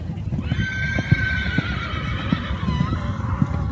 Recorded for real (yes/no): yes